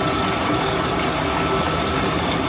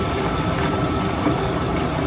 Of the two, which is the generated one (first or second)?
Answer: second